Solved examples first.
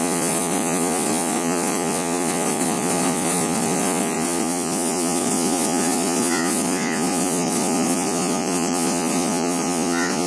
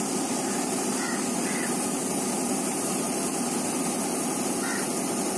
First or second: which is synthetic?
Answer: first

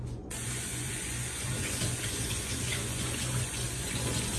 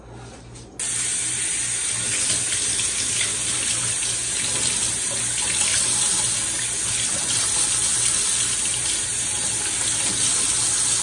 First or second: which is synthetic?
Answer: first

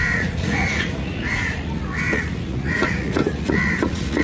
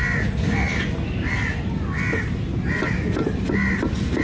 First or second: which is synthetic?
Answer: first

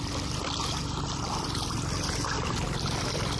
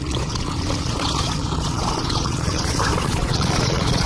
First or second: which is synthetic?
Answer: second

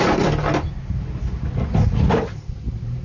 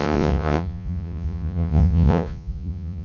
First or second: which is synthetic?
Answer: second